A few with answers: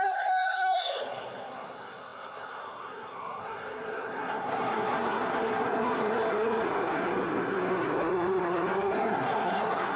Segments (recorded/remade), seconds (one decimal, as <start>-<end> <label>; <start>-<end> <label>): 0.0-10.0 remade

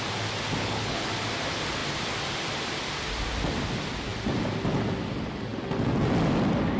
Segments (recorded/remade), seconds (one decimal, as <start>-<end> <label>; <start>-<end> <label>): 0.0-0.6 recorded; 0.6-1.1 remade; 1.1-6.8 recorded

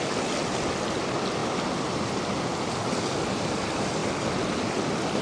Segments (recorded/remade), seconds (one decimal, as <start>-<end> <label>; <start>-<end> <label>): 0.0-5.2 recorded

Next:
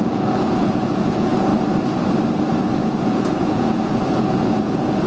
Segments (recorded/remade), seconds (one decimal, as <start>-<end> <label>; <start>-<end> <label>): 0.0-1.5 remade; 1.5-3.0 recorded; 3.0-5.1 remade

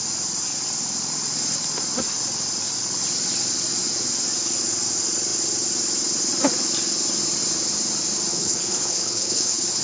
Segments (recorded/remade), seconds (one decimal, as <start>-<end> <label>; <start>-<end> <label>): 0.0-8.3 recorded; 8.3-9.8 remade